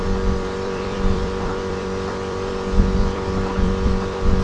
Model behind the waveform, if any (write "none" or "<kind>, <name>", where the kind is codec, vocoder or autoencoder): vocoder, BigVGAN v2